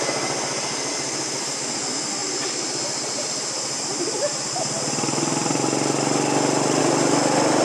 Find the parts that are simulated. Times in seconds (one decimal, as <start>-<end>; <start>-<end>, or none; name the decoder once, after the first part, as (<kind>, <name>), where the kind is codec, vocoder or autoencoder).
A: none